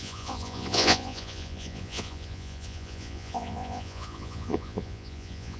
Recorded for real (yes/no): no